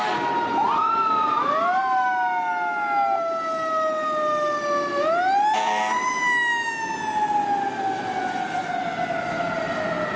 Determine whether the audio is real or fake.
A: real